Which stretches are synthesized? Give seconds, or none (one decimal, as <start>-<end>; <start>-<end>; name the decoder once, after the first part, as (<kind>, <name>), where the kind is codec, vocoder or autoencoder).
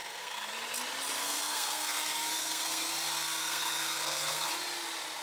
0.0-0.5 (codec, SNAC); 1.2-2.9; 3.4-4.5